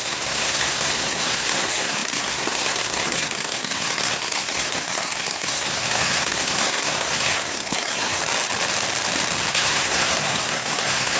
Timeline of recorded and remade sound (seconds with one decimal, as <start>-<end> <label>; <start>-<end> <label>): 0.0-8.2 remade; 8.2-9.5 recorded; 9.5-11.2 remade